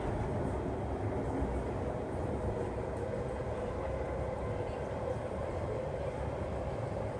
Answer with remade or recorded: recorded